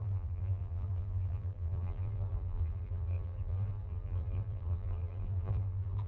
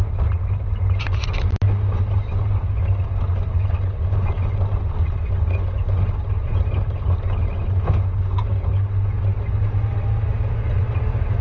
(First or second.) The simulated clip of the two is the first